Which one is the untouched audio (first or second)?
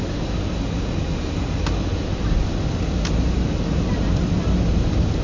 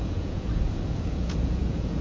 first